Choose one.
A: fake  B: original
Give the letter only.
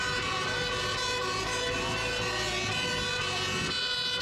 B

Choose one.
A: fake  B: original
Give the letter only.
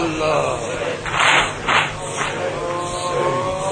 B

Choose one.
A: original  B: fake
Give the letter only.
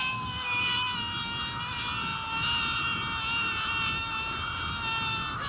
A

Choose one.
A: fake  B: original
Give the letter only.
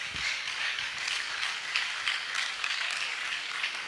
A